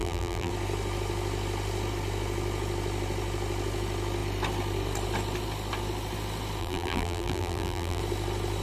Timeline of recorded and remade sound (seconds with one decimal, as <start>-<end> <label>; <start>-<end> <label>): 0.0-0.5 remade; 0.5-6.6 recorded; 6.6-8.0 remade; 8.0-8.6 recorded